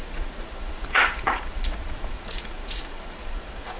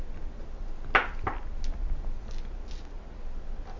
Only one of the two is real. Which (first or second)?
second